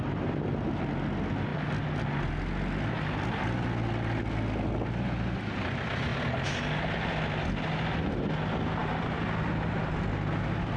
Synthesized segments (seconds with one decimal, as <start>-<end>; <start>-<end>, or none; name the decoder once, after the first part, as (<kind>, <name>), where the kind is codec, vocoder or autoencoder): 8.8-9.9 (vocoder, BigVGAN v2)